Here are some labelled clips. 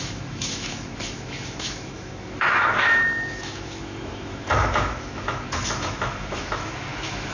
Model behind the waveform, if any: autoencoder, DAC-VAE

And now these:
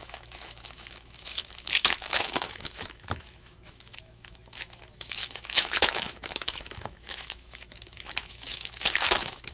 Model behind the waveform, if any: autoencoder, DAC-VAE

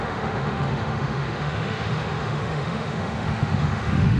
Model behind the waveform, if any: autoencoder, DAC-VAE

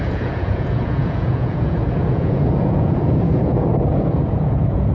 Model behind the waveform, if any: vocoder, Vocos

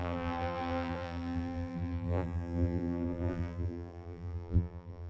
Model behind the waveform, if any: vocoder, BigVGAN v2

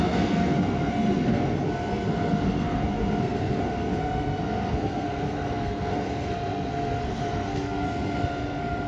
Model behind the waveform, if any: codec, SNAC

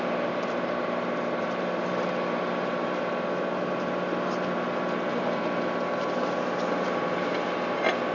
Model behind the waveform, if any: none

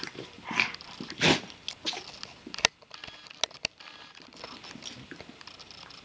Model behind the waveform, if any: none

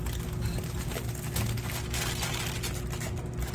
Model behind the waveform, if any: none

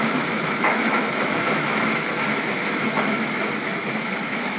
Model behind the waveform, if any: autoencoder, DAC-VAE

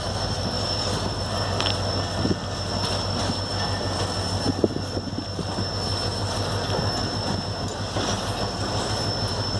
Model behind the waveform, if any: none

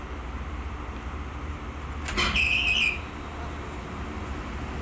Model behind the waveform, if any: none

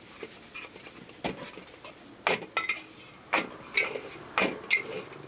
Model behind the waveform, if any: none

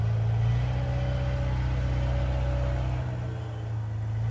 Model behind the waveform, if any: none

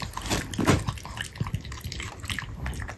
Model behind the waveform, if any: none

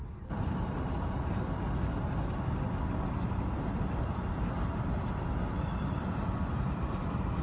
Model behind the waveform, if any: none